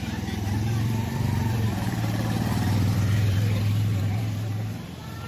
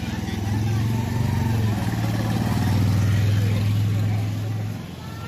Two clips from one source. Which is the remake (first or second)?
first